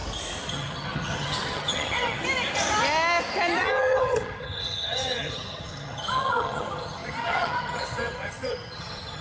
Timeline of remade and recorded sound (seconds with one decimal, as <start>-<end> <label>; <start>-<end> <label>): 0.0-0.5 recorded; 0.5-2.2 remade; 2.2-3.6 recorded; 3.6-9.2 remade